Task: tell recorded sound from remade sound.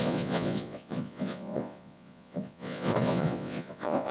remade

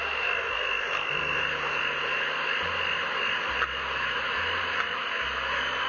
recorded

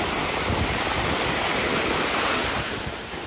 recorded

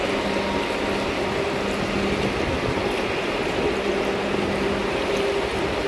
recorded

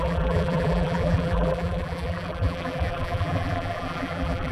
remade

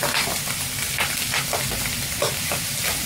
recorded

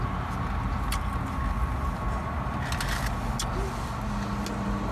recorded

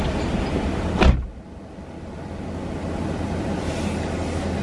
recorded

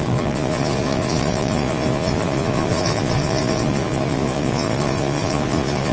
remade